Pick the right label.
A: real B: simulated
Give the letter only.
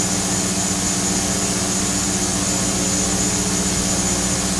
A